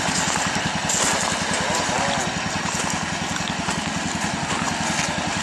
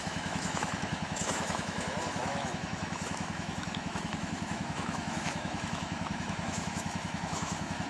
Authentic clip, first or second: first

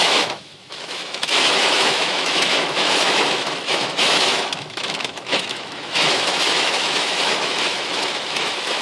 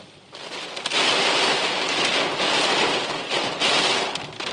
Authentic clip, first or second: second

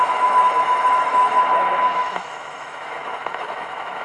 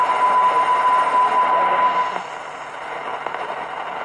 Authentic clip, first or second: second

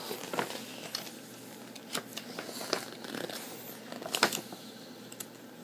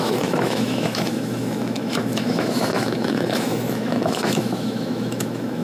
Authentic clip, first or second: first